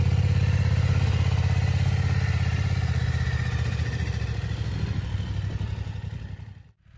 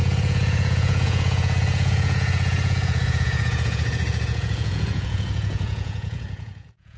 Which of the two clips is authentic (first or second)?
first